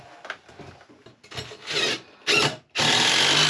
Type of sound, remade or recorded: recorded